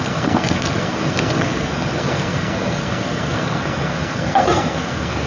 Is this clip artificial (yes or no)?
yes